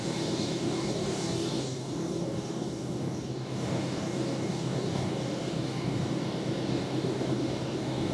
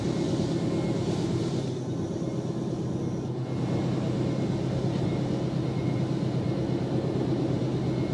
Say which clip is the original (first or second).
second